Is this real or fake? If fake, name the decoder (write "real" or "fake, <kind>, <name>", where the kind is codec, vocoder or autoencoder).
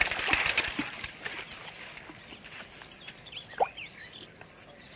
real